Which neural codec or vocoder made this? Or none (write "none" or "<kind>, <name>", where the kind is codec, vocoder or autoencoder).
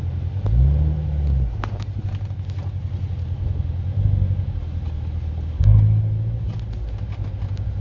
none